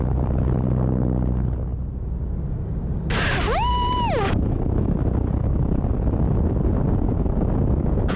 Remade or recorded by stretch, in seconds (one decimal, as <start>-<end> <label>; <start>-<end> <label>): 0.0-8.2 recorded